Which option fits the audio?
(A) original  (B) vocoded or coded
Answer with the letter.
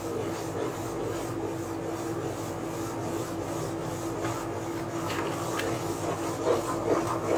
A